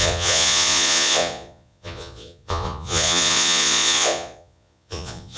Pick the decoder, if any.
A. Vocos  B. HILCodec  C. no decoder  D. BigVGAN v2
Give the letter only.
A